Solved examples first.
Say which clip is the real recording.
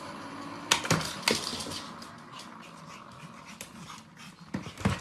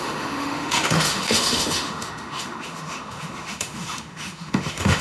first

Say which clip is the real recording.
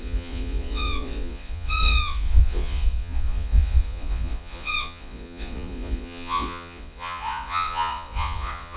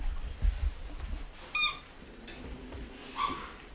second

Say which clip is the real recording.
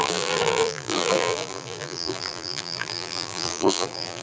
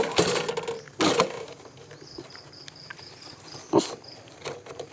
second